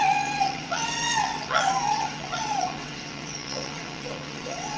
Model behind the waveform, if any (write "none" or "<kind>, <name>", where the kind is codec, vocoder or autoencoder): vocoder, WaveNeXt